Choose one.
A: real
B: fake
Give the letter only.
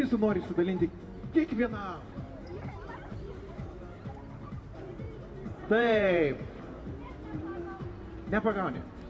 B